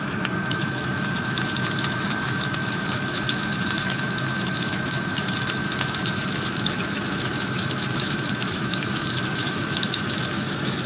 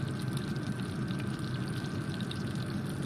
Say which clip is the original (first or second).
second